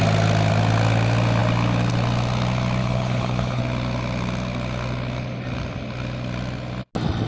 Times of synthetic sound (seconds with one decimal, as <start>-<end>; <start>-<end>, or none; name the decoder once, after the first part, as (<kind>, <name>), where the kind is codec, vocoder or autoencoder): 2.8-3.6 (codec, HILCodec)